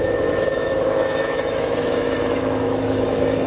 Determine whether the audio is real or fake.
fake